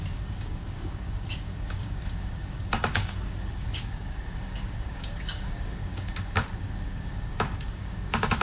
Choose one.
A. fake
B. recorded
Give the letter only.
A